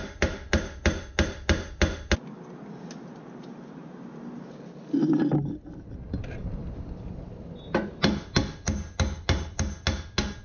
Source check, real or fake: real